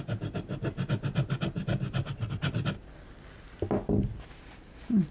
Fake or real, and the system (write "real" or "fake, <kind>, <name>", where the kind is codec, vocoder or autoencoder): real